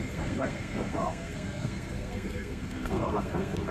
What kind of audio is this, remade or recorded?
remade